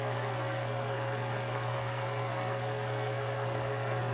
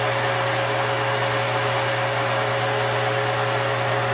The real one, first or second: second